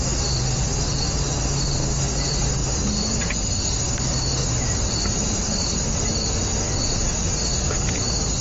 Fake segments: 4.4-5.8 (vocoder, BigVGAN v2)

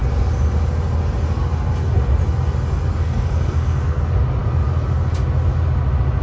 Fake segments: 2.9-4.0 (codec, SNAC)